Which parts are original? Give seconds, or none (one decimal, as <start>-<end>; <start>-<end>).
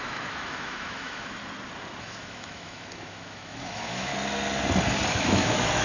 1.4-2.0; 4.1-5.1